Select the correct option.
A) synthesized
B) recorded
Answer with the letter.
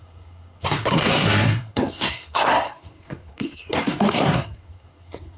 A